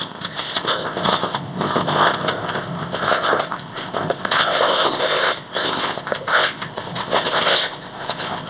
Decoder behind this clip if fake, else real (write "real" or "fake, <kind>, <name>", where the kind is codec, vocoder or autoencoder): fake, codec, ZipCodec